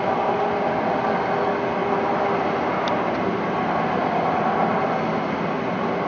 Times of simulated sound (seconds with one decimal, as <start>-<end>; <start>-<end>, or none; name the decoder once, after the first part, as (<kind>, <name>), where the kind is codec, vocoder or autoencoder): none